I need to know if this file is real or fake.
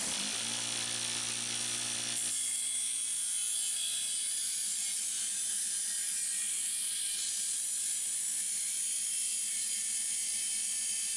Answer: real